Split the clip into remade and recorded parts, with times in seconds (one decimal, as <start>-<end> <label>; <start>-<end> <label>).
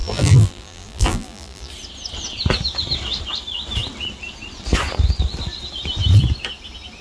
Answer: 0.0-1.7 remade; 1.7-7.0 recorded